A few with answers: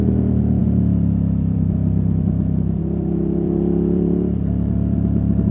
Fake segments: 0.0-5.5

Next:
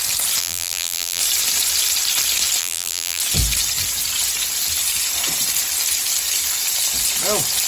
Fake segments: 0.4-1.2; 2.6-3.2

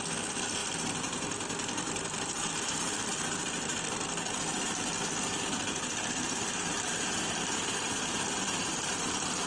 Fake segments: 0.6-4.7; 6.0-9.0

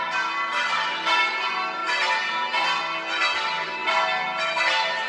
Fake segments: none

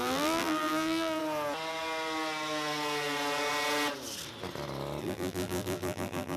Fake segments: 0.0-1.2; 5.0-6.4

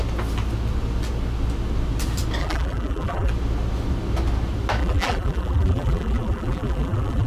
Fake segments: 2.4-3.3; 4.8-7.3

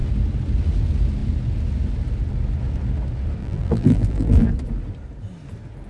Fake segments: 3.4-4.5

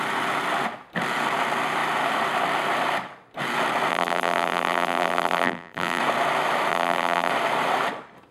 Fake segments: 3.9-6.0; 6.7-7.3